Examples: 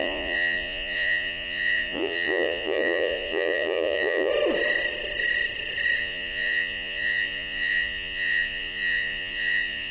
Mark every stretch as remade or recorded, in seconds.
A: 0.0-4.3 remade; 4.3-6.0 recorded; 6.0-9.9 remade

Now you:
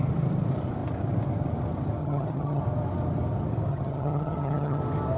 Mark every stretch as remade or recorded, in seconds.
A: 0.0-2.0 recorded; 2.0-2.6 remade; 2.6-3.7 recorded; 3.7-4.8 remade; 4.8-5.2 recorded

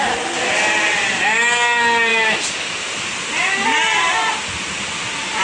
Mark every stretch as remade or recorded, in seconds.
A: 0.0-5.4 recorded

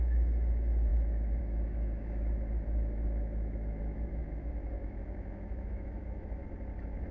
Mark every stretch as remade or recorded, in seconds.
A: 0.0-6.4 remade; 6.4-7.1 recorded

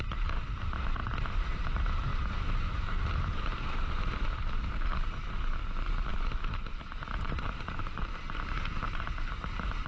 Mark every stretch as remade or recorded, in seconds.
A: 0.0-9.9 remade

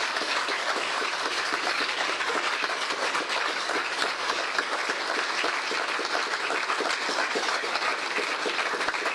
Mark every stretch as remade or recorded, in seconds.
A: 0.0-4.8 remade; 4.8-7.1 recorded; 7.1-7.9 remade; 7.9-9.1 recorded

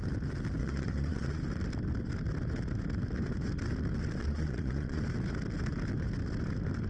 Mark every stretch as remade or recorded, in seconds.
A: 0.0-0.6 recorded; 0.6-1.4 remade; 1.4-4.2 recorded; 4.2-5.0 remade; 5.0-6.9 recorded